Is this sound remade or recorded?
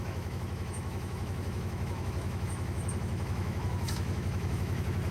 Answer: remade